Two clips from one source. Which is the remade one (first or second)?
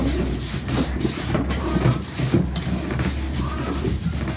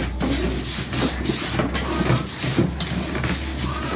first